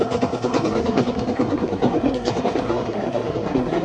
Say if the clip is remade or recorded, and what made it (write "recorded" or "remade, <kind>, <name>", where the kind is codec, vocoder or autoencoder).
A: remade, codec, SNAC